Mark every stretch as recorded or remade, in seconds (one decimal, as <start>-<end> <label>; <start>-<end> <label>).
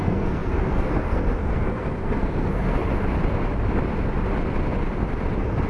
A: 0.0-2.8 remade; 2.8-5.7 recorded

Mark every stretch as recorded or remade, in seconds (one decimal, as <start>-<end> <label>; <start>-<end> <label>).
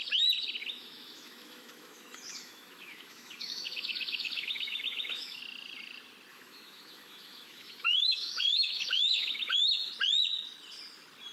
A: 0.0-0.6 recorded; 0.6-5.4 remade; 5.4-6.3 recorded; 6.3-9.9 remade; 9.9-11.3 recorded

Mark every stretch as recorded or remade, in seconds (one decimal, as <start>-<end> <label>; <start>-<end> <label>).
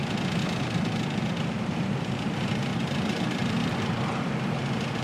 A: 0.0-0.4 recorded; 0.4-1.2 remade; 1.2-2.7 recorded; 2.7-4.3 remade; 4.3-5.0 recorded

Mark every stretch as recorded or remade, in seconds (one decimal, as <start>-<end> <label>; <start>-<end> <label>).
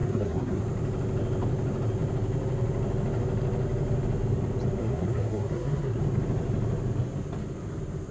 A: 0.0-0.6 remade; 0.6-4.8 recorded; 4.8-6.0 remade; 6.0-8.1 recorded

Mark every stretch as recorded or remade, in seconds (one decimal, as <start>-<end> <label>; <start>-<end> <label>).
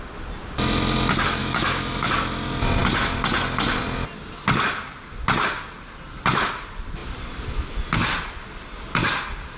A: 0.0-1.4 recorded; 1.4-2.1 remade; 2.1-9.6 recorded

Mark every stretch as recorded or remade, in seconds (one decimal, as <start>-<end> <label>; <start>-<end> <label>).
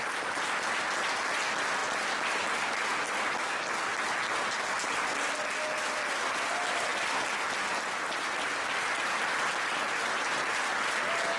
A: 0.0-11.4 recorded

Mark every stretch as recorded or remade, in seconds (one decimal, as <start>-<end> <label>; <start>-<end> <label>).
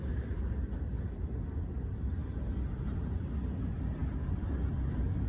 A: 0.0-5.3 recorded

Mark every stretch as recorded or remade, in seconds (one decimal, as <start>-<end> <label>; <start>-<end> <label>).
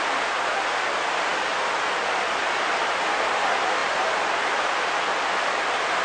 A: 0.0-6.0 recorded